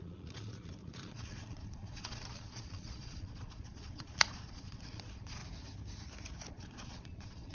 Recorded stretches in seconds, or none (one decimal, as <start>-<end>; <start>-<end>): 5.4-6.5